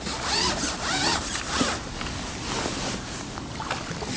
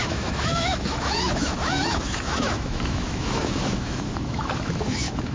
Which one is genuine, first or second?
first